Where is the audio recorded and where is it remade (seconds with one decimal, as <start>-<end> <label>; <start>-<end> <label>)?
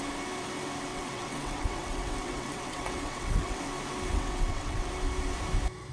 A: 0.0-0.9 recorded; 0.9-3.6 remade; 3.6-4.1 recorded; 4.1-4.9 remade; 4.9-5.9 recorded